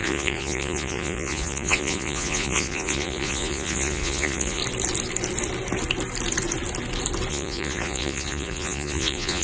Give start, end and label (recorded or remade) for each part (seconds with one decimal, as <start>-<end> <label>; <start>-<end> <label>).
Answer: 0.0-4.6 remade; 4.6-7.3 recorded; 7.3-9.4 remade